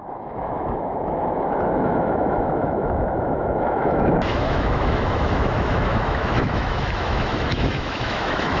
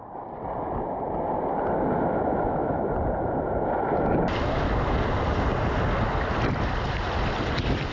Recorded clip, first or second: second